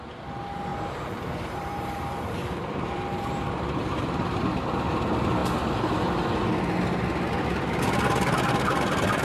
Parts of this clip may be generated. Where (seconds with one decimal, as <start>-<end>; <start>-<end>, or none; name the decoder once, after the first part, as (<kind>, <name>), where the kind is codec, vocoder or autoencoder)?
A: 0.7-4.4 (vocoder, BigVGAN v2)